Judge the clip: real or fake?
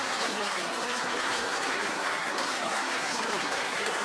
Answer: fake